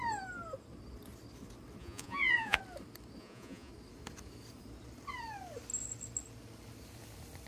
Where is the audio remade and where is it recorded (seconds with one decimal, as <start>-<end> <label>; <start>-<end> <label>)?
0.0-1.8 recorded; 1.8-2.6 remade; 2.6-3.2 recorded; 3.2-3.7 remade; 3.7-7.5 recorded